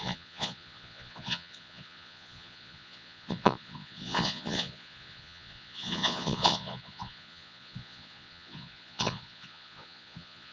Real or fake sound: fake